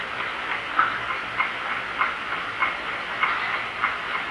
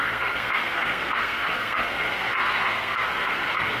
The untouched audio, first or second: first